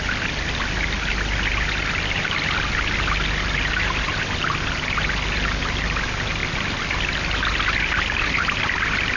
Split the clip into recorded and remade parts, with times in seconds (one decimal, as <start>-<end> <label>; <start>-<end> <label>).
0.0-9.2 recorded